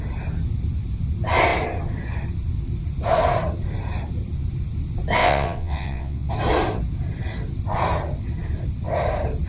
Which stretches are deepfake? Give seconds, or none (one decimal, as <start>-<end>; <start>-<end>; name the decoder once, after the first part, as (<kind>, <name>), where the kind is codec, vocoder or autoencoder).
5.2-6.3 (vocoder, WaveNeXt)